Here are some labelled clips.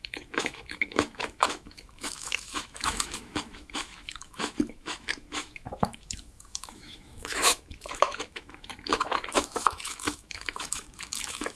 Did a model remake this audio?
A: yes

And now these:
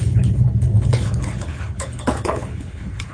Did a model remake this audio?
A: yes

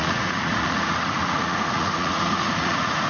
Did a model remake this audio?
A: yes